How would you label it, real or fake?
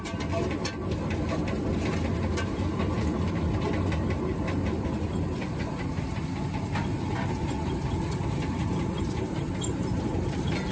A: real